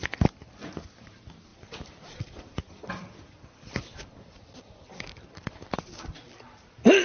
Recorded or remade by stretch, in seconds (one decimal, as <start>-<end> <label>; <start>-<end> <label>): 0.0-1.5 recorded; 1.5-5.7 remade; 5.7-7.0 recorded